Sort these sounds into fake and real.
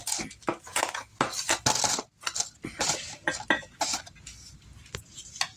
real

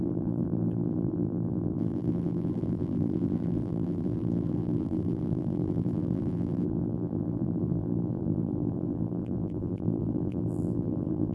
fake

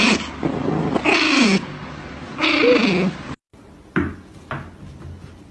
real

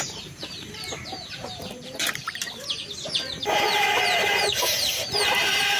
fake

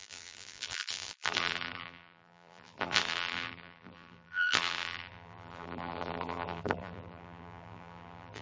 fake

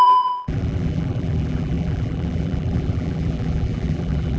fake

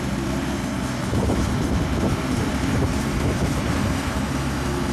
real